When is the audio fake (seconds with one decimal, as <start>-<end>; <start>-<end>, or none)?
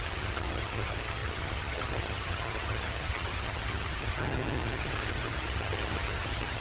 0.0-6.6